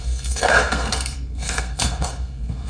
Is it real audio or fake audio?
fake